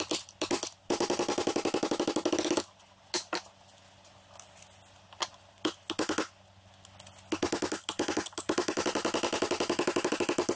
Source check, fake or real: real